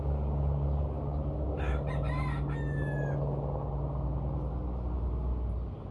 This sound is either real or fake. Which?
real